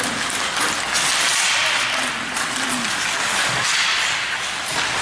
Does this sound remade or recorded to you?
recorded